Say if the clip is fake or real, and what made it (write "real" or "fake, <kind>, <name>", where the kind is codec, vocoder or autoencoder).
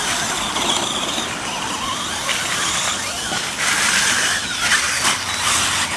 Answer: real